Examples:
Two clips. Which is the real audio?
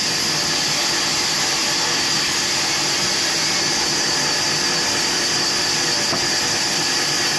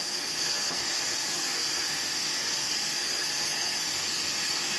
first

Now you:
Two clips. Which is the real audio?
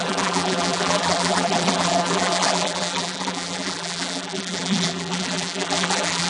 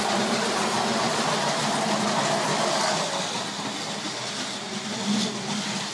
second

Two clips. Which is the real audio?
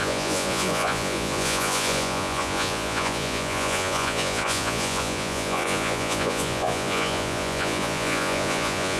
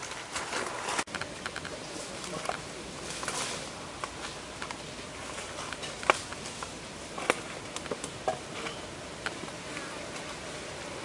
second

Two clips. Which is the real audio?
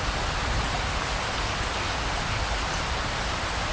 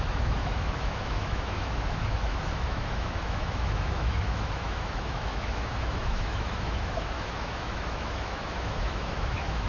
first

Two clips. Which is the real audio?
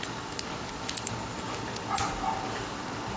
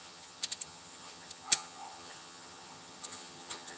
first